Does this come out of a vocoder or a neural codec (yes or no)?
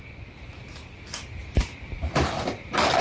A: no